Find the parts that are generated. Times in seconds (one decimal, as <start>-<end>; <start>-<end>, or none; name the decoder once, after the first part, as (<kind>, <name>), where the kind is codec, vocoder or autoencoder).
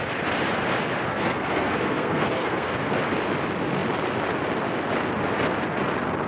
1.1-2.9 (codec, SNAC)